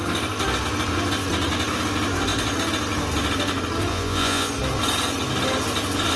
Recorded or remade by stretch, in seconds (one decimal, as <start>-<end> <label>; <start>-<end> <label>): 0.0-3.9 recorded; 3.9-4.5 remade; 4.5-6.2 recorded